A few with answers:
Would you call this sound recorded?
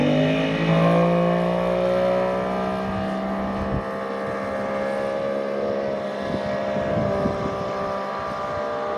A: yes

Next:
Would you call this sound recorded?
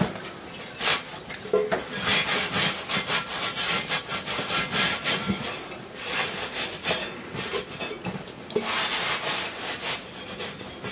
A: yes